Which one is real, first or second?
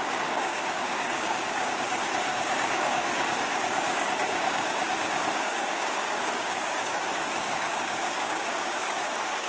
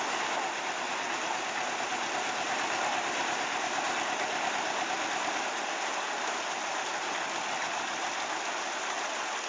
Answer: second